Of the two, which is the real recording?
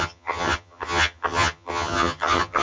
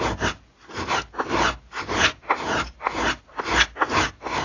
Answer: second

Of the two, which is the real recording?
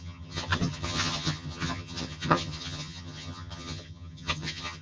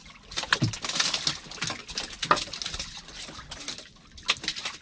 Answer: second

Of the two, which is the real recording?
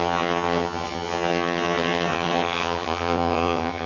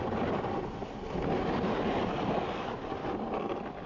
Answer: second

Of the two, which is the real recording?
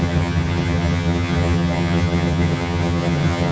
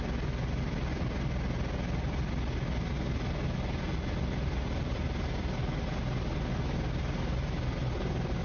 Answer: second